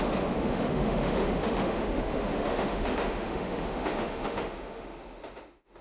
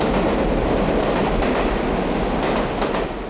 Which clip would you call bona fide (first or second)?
second